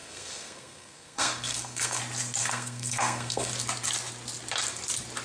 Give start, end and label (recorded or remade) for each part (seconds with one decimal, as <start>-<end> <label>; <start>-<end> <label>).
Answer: 0.0-2.0 remade; 2.0-2.4 recorded; 2.4-3.5 remade; 3.5-5.2 recorded